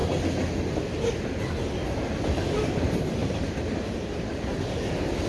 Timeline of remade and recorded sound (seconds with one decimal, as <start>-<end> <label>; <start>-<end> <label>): 0.0-5.3 recorded